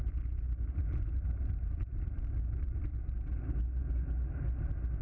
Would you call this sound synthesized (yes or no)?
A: no